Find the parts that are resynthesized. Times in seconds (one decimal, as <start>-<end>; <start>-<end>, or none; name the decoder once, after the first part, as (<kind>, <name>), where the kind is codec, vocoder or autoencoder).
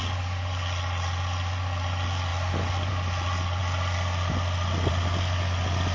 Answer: none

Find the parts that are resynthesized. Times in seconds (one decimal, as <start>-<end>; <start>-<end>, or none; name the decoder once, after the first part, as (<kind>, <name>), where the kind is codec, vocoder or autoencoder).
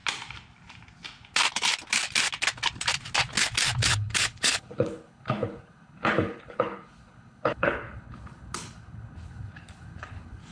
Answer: 3.9-10.5 (codec, HILCodec)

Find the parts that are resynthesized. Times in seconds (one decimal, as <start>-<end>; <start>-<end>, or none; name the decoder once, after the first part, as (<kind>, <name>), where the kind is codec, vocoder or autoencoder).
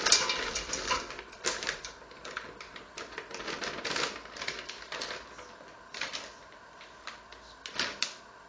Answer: none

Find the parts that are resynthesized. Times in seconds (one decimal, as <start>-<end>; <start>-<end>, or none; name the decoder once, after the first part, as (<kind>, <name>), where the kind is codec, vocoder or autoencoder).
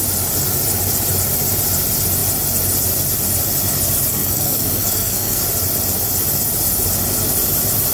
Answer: 4.1-5.4 (codec, SNAC)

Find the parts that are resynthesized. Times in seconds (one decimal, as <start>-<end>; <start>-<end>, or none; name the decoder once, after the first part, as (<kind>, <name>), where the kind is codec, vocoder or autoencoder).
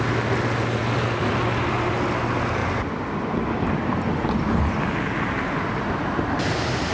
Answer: 0.8-1.7 (vocoder, BigVGAN v2); 2.6-5.9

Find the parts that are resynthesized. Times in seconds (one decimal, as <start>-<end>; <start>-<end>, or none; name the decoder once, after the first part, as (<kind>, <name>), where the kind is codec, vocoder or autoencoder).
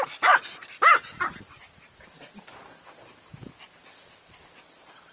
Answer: none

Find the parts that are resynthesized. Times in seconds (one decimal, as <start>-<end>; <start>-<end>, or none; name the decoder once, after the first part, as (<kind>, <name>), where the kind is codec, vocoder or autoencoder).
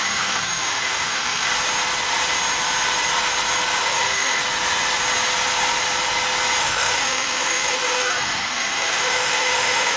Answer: 0.0-1.5 (autoencoder, DAC-VAE); 3.8-4.4; 6.6-10.0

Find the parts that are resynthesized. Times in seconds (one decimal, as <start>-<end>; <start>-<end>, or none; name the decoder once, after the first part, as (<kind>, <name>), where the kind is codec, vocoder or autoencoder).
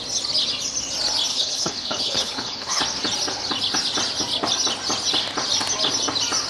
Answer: 1.3-2.8 (codec, HILCodec)